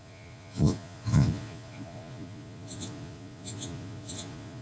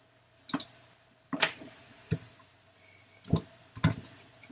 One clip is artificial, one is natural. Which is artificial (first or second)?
first